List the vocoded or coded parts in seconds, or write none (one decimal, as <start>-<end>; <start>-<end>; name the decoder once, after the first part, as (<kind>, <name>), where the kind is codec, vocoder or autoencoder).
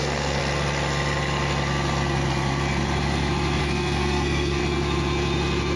0.0-0.4 (codec, SNAC); 3.6-4.6